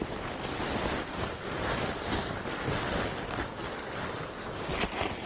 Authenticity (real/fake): real